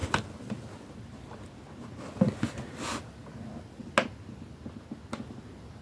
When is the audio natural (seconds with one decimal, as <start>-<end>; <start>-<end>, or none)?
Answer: 0.0-5.8